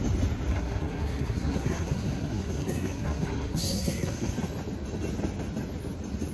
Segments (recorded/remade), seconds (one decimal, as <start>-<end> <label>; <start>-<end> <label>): 0.0-0.5 recorded; 0.5-4.3 remade; 4.3-6.3 recorded